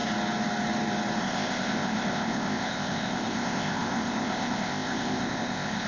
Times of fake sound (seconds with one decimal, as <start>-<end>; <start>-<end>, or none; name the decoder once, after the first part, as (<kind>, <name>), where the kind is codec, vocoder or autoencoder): 1.2-5.9 (codec, ZipCodec)